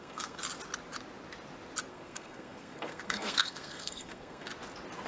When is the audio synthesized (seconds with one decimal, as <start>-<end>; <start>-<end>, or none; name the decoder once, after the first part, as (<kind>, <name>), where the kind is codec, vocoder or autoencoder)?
0.0-0.4 (codec, SNAC); 1.9-4.5